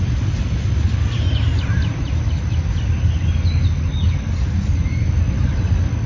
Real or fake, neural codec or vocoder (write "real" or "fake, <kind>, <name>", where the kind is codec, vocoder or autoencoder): real